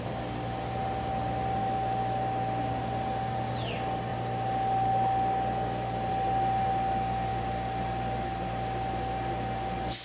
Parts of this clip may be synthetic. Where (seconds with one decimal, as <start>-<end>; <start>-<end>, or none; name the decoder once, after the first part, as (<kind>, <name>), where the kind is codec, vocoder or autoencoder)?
1.6-2.2 (autoencoder, DAC-VAE)